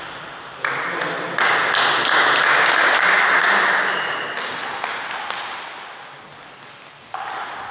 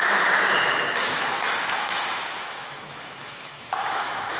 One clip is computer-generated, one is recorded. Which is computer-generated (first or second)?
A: second